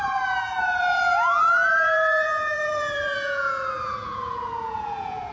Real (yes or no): no